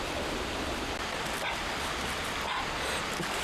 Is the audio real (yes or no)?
yes